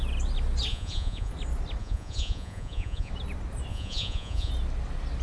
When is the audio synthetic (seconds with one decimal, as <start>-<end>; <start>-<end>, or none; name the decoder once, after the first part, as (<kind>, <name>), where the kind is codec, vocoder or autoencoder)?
0.7-1.3 (vocoder, Vocos); 1.8-3.1; 3.7-4.5